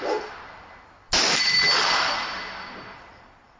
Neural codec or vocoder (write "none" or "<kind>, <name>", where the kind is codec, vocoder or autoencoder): none